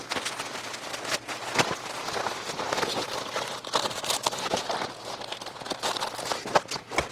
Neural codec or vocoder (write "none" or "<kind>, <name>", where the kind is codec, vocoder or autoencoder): none